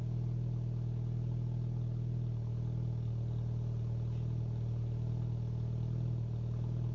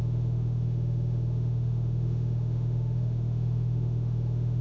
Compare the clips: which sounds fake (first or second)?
second